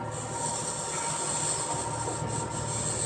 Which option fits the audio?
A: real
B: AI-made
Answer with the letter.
A